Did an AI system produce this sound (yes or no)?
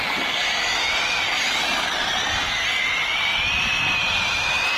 yes